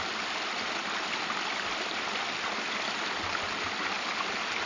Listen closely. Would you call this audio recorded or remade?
recorded